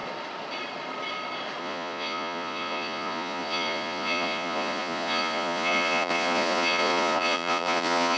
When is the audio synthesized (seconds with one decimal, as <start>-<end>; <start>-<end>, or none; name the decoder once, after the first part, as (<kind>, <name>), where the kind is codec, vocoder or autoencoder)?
1.6-8.2 (vocoder, Vocos)